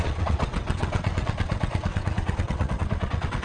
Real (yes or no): no